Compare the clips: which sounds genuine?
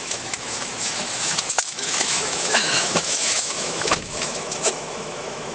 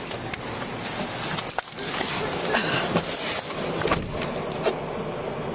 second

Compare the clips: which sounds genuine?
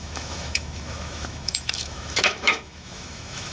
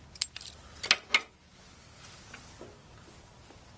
second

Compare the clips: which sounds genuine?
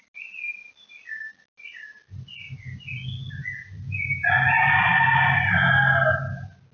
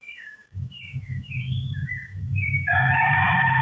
first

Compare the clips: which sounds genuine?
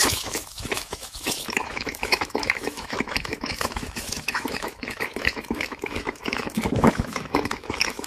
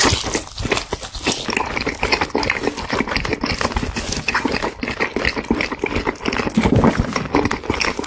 second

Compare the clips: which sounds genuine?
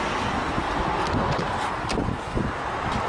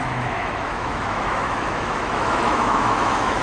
first